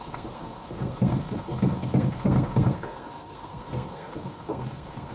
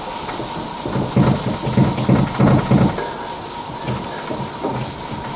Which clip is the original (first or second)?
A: second